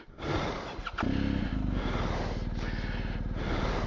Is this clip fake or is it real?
real